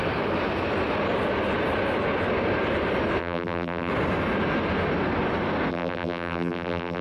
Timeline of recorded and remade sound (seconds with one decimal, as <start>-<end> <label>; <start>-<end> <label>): 0.0-3.2 recorded; 3.2-3.9 remade; 3.9-5.7 recorded; 5.7-7.0 remade